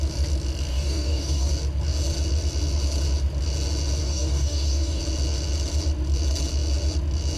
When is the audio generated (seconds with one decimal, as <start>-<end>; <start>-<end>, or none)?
0.7-1.5; 4.0-5.0